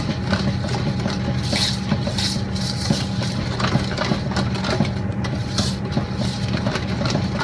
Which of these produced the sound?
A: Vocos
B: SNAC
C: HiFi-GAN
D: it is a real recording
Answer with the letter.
D